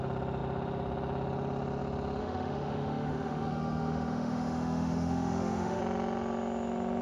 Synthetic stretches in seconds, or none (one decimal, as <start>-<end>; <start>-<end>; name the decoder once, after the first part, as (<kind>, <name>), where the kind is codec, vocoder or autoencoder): 2.2-5.8 (autoencoder, DAC-VAE)